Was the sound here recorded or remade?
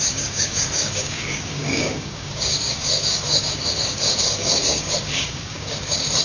remade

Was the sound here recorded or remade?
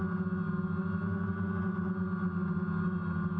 recorded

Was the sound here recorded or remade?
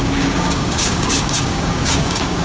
remade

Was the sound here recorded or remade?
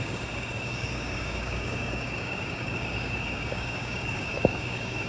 remade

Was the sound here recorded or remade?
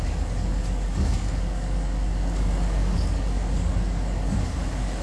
remade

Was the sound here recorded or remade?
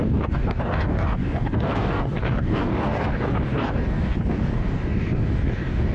remade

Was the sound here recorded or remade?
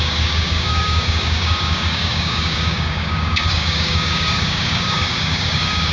remade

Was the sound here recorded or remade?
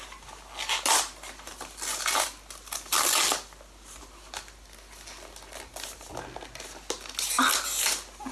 recorded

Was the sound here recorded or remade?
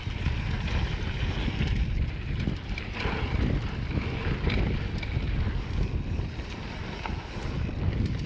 recorded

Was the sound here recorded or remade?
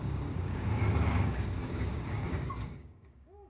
remade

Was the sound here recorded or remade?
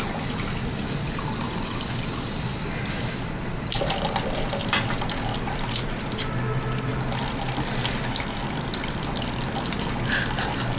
recorded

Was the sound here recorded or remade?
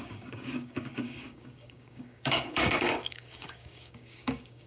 remade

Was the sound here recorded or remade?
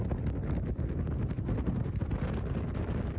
recorded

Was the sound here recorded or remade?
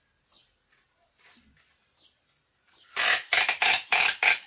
recorded